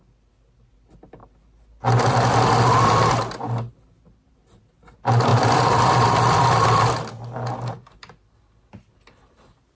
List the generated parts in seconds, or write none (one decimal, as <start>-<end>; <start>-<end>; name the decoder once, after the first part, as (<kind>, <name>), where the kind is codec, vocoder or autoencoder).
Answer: 5.3-6.5 (vocoder, BigVGAN v2)